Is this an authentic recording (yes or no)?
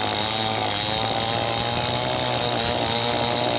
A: yes